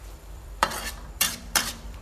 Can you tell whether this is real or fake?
fake